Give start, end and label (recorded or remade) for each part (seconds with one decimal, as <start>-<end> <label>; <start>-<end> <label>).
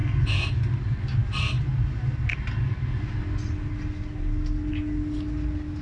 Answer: 0.0-5.8 recorded